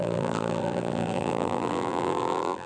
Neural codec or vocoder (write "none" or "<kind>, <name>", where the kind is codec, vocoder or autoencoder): vocoder, BigVGAN v2